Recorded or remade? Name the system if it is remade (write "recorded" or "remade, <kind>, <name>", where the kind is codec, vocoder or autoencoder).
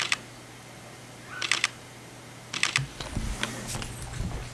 recorded